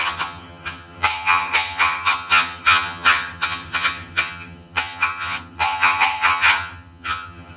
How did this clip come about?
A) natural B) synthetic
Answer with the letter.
B